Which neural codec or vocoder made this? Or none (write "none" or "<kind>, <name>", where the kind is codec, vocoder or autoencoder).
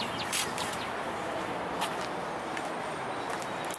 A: none